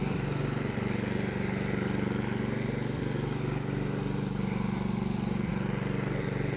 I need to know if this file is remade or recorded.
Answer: recorded